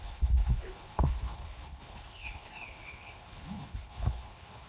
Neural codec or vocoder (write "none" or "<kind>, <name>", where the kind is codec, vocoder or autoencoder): codec, HILCodec